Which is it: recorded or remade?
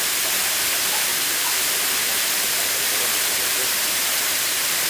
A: recorded